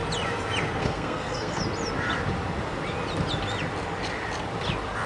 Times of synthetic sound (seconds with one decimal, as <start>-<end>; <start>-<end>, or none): 0.8-1.6